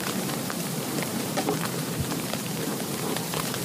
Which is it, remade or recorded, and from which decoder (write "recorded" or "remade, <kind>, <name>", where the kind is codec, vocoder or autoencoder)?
remade, vocoder, BigVGAN v2